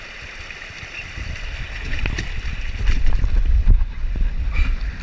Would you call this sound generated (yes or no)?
no